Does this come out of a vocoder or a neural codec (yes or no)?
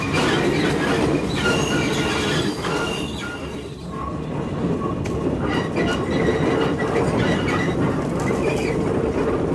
no